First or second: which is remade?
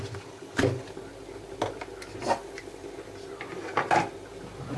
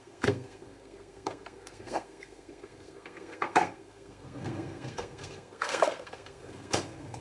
second